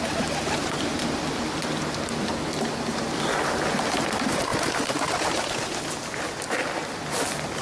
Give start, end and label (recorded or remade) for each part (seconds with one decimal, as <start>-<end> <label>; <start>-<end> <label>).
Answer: 0.0-7.6 recorded